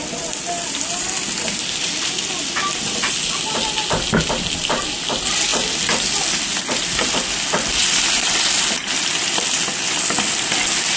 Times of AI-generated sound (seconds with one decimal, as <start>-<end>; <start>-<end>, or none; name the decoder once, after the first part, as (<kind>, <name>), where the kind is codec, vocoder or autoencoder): none